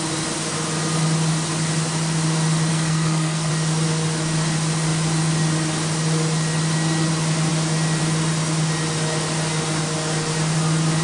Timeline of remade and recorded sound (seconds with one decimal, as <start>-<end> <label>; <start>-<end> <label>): 0.0-2.7 recorded; 2.7-3.5 remade; 3.5-11.0 recorded